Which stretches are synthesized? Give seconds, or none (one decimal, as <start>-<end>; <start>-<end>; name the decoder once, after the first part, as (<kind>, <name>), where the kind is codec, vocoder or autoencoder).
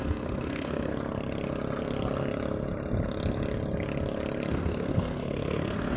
0.0-0.9 (codec, SNAC); 4.5-6.0